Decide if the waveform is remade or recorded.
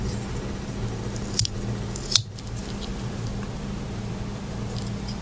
recorded